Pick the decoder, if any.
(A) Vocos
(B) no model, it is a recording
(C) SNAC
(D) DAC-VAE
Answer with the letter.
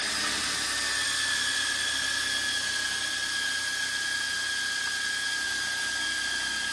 B